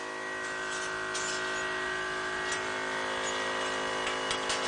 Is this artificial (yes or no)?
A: no